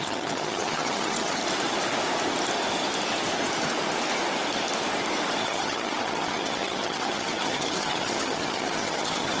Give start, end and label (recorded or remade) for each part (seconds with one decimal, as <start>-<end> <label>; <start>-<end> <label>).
0.0-1.4 remade; 1.4-5.4 recorded; 5.4-9.4 remade